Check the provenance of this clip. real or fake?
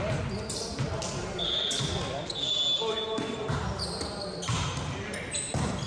real